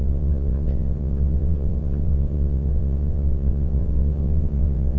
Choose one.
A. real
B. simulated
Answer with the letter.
B